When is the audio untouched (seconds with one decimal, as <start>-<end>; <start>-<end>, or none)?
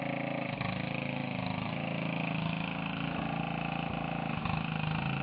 0.0-5.2